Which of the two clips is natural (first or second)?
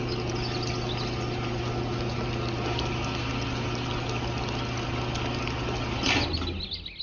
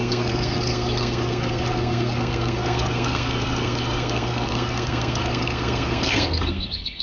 first